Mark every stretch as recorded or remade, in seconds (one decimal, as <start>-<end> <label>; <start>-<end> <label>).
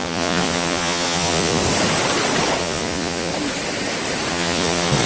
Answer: 0.0-1.6 remade; 1.6-2.6 recorded; 2.6-3.3 remade; 3.3-4.3 recorded; 4.3-5.1 remade